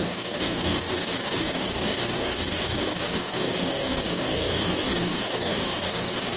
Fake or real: fake